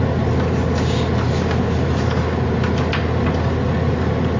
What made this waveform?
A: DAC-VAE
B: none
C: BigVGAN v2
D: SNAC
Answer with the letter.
B